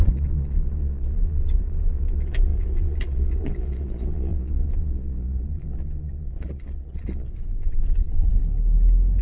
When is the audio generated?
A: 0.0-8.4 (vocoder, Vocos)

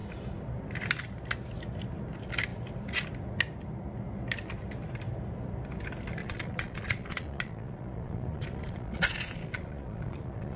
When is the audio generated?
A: 6.2-10.6 (vocoder, Vocos)

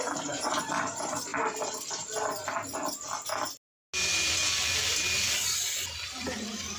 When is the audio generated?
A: none